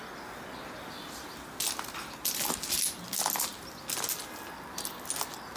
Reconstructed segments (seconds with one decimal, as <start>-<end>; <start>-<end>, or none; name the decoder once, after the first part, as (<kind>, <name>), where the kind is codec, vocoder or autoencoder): none